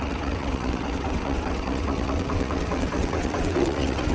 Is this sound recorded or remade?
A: remade